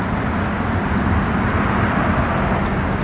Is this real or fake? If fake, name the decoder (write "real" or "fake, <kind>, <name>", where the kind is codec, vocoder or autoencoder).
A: real